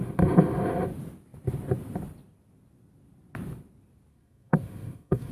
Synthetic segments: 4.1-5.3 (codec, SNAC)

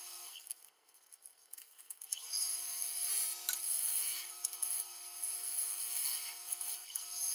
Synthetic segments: 0.0-3.1 (codec, SNAC); 3.6-7.3

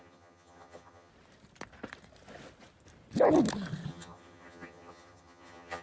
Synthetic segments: 0.0-1.1 (vocoder, HiFi-GAN); 3.9-5.8

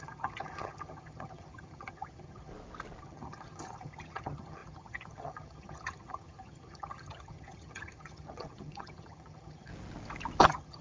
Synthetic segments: 0.0-2.5 (vocoder, HiFi-GAN); 3.0-9.7; 10.4-10.8

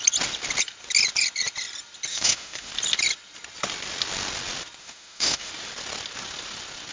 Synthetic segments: 2.1-2.7 (autoencoder, DAC-VAE); 4.8-5.5